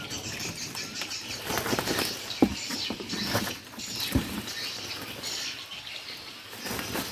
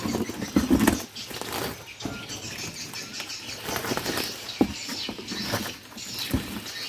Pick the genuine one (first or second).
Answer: second